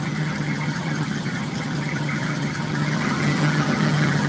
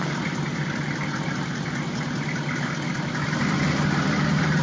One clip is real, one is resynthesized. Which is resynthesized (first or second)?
first